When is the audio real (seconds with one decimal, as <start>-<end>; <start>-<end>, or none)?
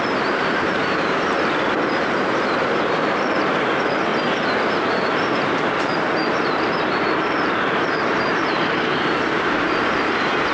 4.1-4.7